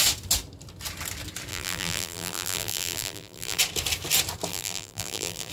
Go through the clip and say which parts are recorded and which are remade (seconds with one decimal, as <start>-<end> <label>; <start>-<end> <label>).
0.0-1.5 recorded; 1.5-3.6 remade; 3.6-4.5 recorded; 4.5-5.5 remade